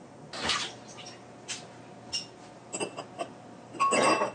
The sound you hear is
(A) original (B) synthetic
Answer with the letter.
A